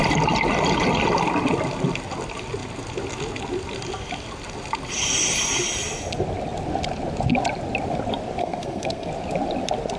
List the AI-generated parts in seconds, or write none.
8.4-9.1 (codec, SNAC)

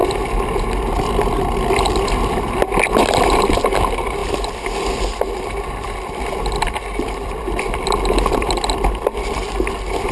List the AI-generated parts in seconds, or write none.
4.2-4.7 (vocoder, BigVGAN v2); 6.6-7.4

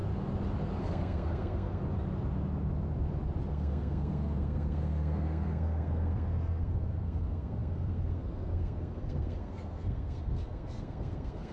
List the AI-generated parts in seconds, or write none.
0.8-1.8 (codec, SNAC); 3.5-11.5

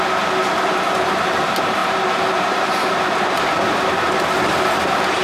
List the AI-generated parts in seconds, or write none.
1.8-4.1 (vocoder, BigVGAN v2)

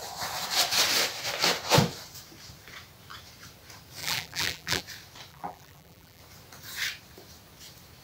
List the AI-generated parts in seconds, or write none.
4.0-4.8 (vocoder, BigVGAN v2); 5.3-6.2